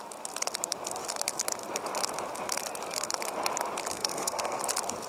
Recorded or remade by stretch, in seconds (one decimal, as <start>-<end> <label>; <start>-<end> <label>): 0.0-3.9 recorded; 3.9-4.6 remade; 4.6-5.1 recorded

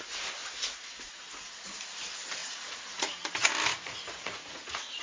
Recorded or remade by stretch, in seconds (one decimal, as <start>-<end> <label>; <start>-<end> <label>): 0.0-0.4 recorded; 0.4-1.8 remade; 1.8-2.4 recorded; 2.4-3.3 remade; 3.3-3.7 recorded; 3.7-5.0 remade